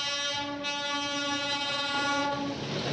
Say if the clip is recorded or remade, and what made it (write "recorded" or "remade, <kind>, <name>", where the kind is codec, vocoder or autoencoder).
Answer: recorded